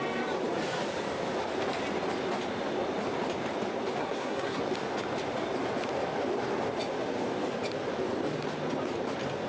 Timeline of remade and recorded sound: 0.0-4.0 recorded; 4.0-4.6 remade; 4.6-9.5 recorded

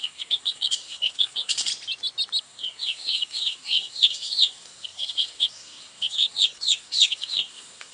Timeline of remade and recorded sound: 0.0-1.7 remade; 1.7-2.4 recorded; 2.4-7.9 remade

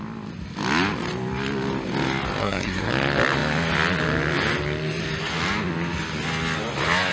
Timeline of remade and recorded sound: 0.0-2.4 recorded; 2.4-2.9 remade; 2.9-7.1 recorded

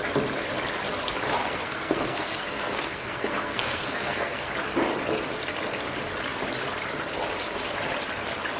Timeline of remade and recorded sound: 0.0-1.4 recorded; 1.4-4.5 remade; 4.5-8.6 recorded

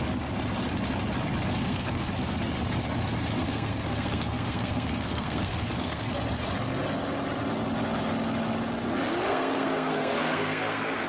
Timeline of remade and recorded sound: 0.0-1.6 recorded; 1.6-2.1 remade; 2.1-3.4 recorded; 3.4-6.1 remade; 6.1-9.3 recorded; 9.3-11.1 remade

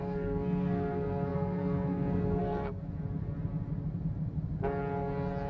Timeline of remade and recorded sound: 0.0-2.8 remade; 2.8-5.5 recorded

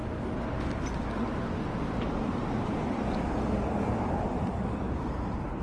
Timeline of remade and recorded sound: 0.0-5.6 recorded